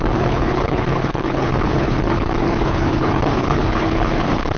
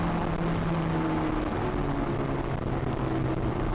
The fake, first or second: first